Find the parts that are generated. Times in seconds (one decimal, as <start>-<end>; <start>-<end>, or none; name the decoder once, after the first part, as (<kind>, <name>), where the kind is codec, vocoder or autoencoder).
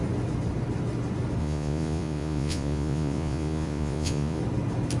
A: 1.4-4.4 (vocoder, Vocos)